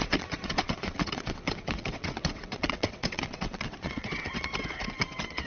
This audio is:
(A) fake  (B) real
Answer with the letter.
A